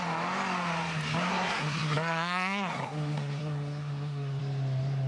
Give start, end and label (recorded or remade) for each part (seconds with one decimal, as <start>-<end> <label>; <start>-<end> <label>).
0.0-1.3 recorded; 1.3-4.4 remade; 4.4-5.1 recorded